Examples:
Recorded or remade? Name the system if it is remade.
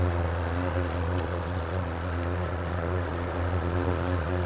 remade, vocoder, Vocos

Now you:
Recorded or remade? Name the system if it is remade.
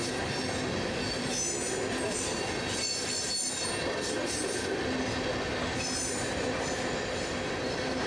recorded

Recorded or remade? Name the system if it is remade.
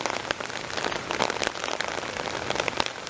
recorded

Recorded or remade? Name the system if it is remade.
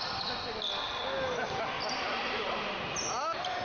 recorded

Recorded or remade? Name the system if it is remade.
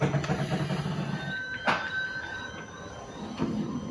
recorded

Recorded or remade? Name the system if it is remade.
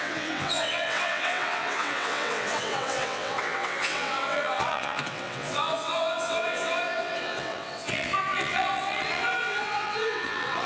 remade, vocoder, WaveNeXt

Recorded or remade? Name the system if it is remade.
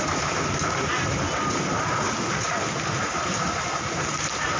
recorded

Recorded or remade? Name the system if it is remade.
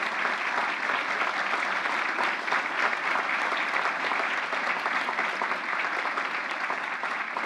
recorded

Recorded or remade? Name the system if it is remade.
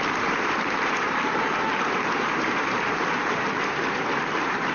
remade, vocoder, BigVGAN v2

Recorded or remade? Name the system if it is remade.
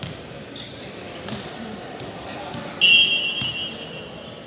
recorded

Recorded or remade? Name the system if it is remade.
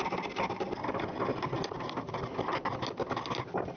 recorded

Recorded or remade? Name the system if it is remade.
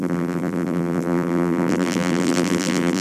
remade, vocoder, BigVGAN v2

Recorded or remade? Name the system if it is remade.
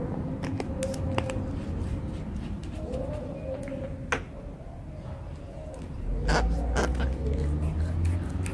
recorded